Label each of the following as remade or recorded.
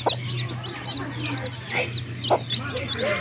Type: recorded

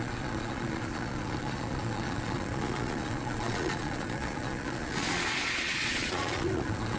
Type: remade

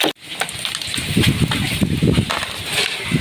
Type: recorded